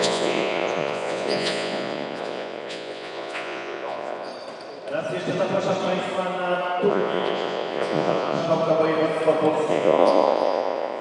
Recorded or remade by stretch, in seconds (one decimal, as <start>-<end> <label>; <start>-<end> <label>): 0.0-4.3 remade; 4.3-6.9 recorded; 6.9-8.4 remade; 8.4-9.7 recorded; 9.7-11.0 remade